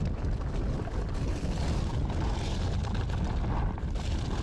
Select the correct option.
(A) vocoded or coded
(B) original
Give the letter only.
B